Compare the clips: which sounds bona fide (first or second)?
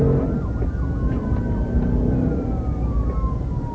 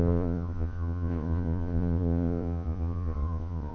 first